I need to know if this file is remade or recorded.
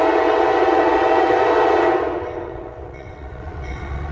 remade